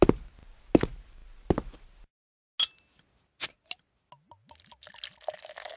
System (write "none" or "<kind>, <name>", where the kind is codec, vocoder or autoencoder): none